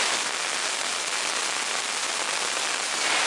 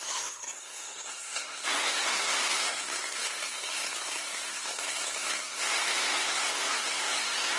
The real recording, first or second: first